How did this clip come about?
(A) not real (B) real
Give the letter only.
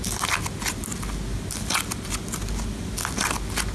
B